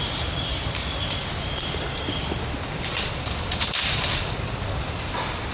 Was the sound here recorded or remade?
remade